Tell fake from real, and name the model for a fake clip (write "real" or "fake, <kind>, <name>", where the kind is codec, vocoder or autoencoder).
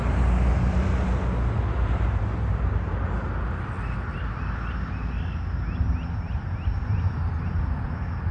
real